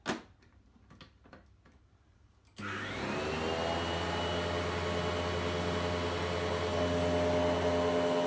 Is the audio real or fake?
real